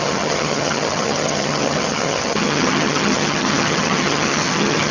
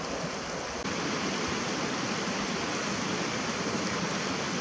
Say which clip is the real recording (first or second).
second